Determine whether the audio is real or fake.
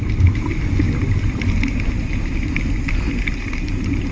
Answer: real